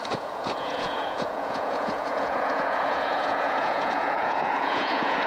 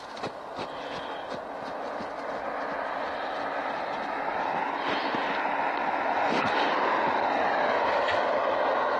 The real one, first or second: second